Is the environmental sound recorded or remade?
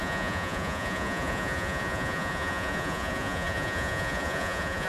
remade